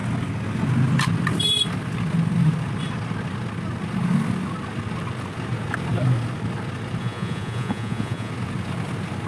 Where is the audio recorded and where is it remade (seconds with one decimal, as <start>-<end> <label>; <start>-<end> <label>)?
0.0-7.0 recorded; 7.0-8.3 remade; 8.3-9.3 recorded